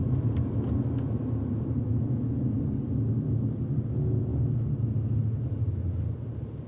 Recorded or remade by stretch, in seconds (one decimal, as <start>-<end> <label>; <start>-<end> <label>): 0.0-6.7 recorded